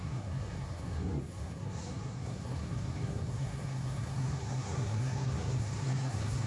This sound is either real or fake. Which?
fake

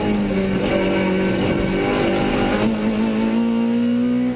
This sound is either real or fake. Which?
real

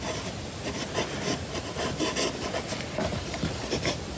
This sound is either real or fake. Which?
real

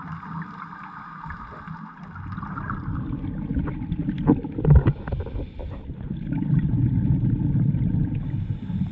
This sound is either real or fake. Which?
real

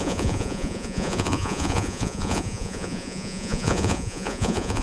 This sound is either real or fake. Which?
fake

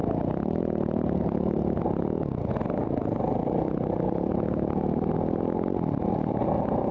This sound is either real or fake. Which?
real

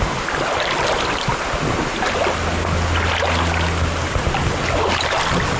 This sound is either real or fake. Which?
real